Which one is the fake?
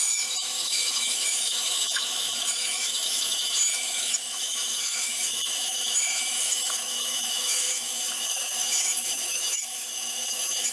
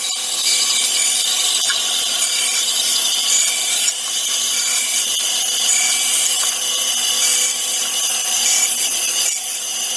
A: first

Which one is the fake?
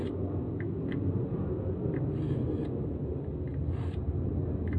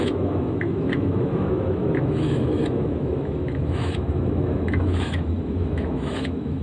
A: second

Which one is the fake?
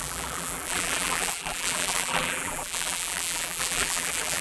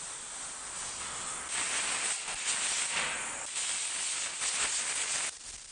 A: first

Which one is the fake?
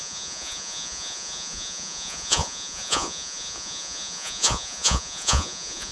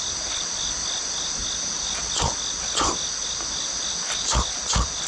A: first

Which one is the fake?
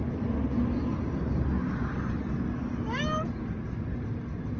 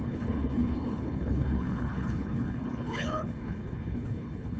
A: second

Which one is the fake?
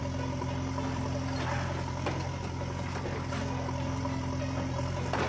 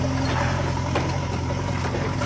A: second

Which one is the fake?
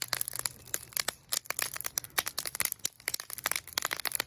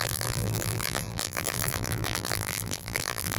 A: second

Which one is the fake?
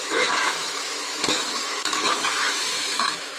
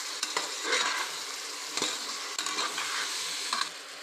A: first